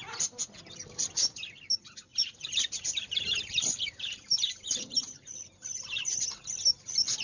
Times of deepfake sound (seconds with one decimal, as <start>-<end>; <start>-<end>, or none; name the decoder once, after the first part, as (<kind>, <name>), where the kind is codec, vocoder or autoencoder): 2.1-6.0 (vocoder, BigVGAN v2)